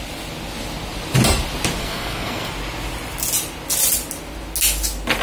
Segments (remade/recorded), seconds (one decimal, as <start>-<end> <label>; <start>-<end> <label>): 0.0-1.8 recorded; 1.8-2.5 remade; 2.5-5.2 recorded

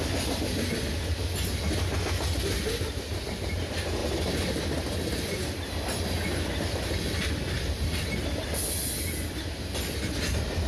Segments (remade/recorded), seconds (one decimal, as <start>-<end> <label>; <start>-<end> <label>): 0.0-10.7 recorded

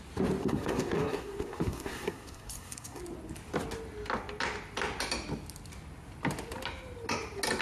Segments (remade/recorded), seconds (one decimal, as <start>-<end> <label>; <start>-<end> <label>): 0.0-0.4 recorded; 0.4-3.0 remade; 3.0-7.6 recorded

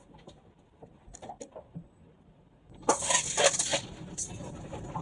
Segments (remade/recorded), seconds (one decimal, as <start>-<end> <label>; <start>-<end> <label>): 0.0-5.0 recorded

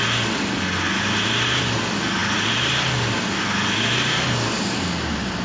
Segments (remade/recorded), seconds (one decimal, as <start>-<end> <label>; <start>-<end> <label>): 0.0-5.4 recorded

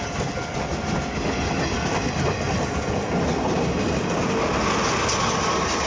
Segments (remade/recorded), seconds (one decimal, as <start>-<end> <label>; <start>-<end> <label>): 0.0-5.9 recorded